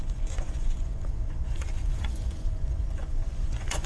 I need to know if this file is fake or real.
fake